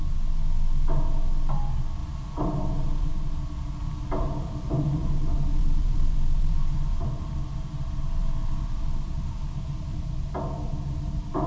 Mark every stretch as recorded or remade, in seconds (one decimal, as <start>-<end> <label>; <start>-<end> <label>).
0.0-2.0 recorded; 2.0-3.1 remade; 3.1-3.8 recorded; 3.8-7.0 remade; 7.0-8.2 recorded; 8.2-10.0 remade; 10.0-11.5 recorded